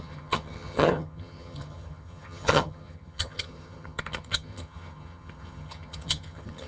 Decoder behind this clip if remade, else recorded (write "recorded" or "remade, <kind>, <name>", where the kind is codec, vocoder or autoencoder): remade, vocoder, HiFi-GAN